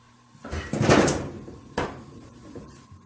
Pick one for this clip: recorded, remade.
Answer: remade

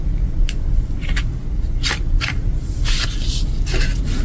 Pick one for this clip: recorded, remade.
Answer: recorded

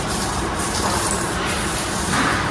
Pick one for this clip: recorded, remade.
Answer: remade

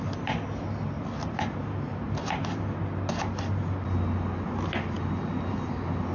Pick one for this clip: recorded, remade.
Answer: recorded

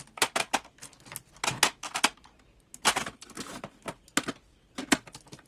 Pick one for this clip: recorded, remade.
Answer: recorded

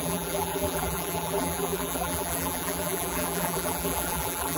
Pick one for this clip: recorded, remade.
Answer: remade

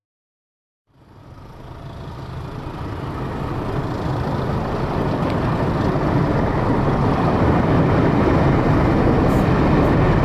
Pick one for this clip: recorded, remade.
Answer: recorded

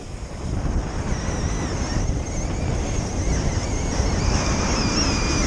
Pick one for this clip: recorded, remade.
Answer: recorded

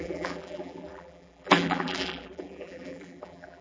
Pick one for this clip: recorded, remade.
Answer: remade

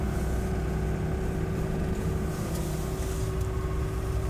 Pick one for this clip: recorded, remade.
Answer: recorded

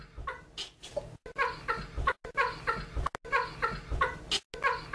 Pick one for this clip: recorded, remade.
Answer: recorded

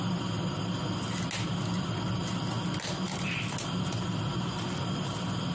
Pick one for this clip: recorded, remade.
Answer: recorded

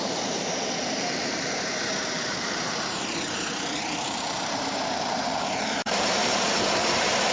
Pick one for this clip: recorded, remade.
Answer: remade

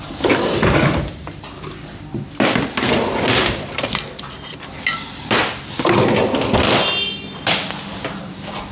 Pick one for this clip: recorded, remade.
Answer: recorded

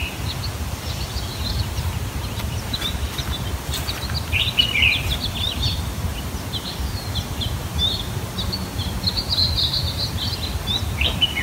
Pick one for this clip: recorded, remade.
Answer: recorded